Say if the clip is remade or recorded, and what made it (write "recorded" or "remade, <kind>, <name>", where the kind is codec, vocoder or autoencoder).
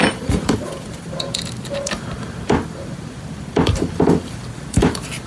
remade, vocoder, BigVGAN v2